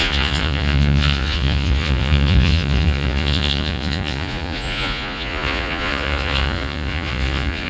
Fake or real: fake